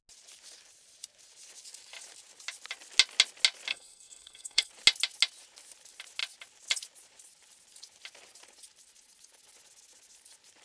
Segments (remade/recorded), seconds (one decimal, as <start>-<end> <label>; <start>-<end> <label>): 0.0-3.7 recorded; 3.7-4.7 remade; 4.7-10.6 recorded